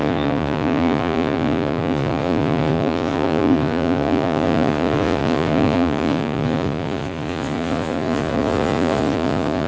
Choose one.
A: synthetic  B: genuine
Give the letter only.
A